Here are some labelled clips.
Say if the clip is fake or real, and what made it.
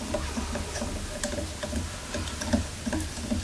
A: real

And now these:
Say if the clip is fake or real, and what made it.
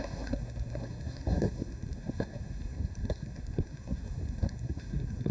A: fake, codec, SNAC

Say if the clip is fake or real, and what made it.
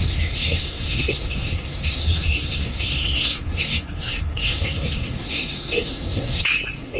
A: fake, codec, SNAC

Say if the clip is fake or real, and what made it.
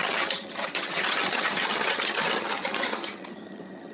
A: fake, vocoder, HiFi-GAN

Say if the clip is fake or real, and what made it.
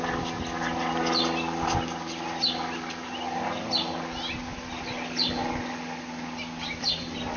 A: real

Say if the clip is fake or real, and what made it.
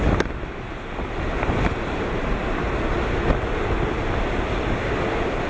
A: real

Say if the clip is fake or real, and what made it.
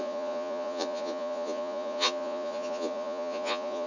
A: fake, vocoder, Vocos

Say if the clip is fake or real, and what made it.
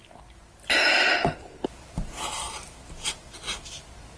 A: real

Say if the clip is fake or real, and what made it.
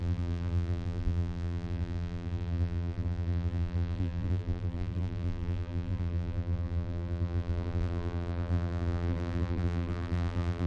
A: fake, vocoder, BigVGAN v2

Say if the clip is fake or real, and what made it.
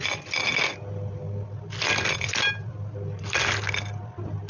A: real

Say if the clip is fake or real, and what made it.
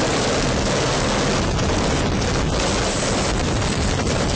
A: real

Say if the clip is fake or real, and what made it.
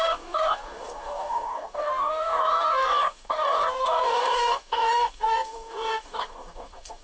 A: fake, codec, DAC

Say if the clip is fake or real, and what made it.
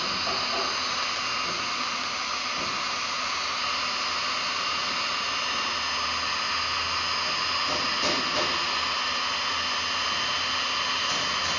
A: real